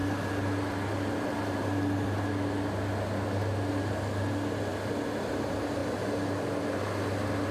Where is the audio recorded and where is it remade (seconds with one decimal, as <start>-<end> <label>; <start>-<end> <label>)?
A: 0.0-7.5 recorded